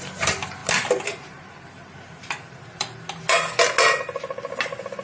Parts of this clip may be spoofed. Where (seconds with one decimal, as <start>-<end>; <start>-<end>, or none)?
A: none